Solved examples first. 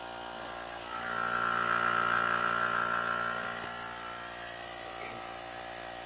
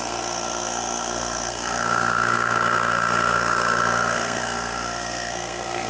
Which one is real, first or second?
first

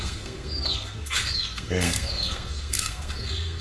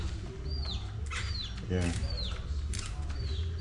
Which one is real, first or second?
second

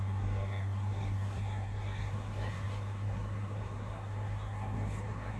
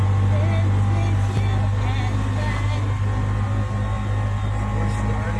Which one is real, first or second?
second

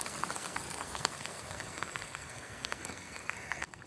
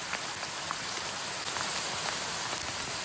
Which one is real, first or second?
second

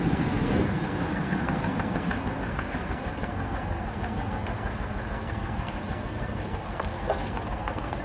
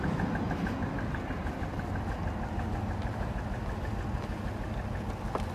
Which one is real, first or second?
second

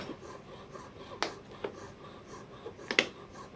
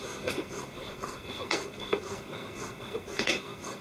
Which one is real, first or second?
first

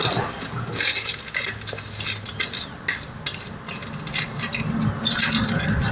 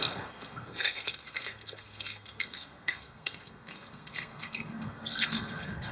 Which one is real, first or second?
first